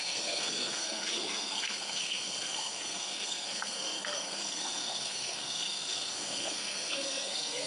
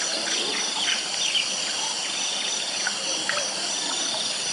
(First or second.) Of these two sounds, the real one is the second